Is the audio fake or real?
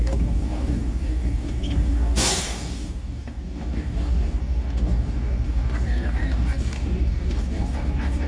fake